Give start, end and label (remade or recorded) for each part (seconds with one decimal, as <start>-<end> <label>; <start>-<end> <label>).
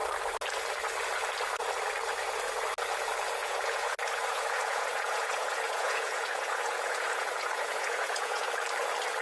0.0-3.4 recorded; 3.4-8.5 remade; 8.5-9.2 recorded